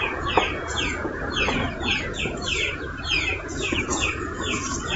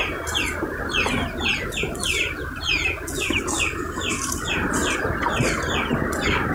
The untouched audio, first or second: second